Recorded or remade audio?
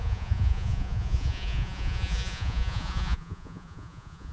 remade